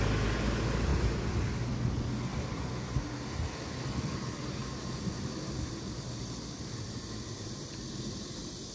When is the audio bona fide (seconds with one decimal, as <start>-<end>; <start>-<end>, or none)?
0.0-0.9; 1.9-2.3; 3.1-8.7

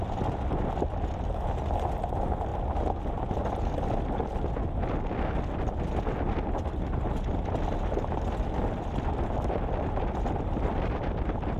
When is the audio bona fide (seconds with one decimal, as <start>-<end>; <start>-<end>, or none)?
0.0-11.6

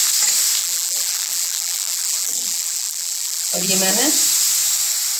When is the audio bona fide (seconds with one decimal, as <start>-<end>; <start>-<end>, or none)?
0.0-0.6; 3.7-5.2

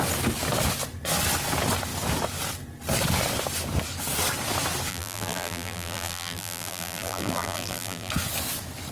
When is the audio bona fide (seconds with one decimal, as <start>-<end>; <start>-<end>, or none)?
0.0-4.9; 8.1-8.9

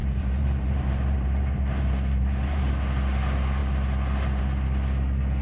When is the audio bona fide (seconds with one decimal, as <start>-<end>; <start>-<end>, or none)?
2.7-5.4

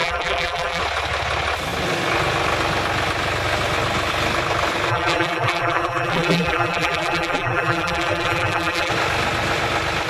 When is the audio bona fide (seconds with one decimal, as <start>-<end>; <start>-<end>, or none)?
0.8-4.9; 8.9-10.1